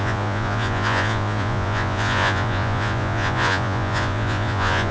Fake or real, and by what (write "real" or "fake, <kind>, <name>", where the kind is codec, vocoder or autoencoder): fake, vocoder, Vocos